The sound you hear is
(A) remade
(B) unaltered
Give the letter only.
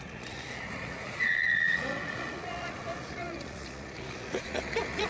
A